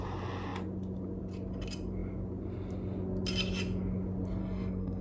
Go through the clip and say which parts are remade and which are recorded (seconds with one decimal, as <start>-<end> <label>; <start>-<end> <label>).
0.0-4.4 recorded; 4.4-5.0 remade